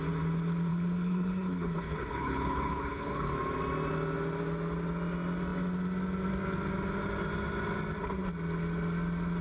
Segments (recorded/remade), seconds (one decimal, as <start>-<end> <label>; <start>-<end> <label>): 0.0-0.7 recorded; 0.7-3.3 remade; 3.3-9.4 recorded